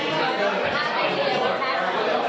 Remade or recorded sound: recorded